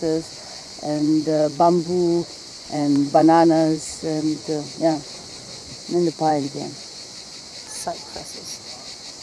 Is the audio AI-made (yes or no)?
yes